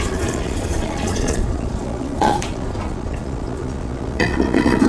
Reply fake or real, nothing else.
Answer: fake